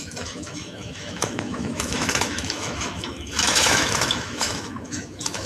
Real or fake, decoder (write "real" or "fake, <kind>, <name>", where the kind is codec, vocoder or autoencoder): fake, autoencoder, DAC-VAE